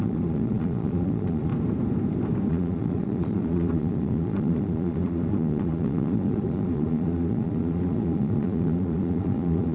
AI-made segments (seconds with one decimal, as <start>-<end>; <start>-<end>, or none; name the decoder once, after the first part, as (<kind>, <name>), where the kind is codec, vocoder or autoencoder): 0.0-1.5 (vocoder, Vocos); 2.5-9.7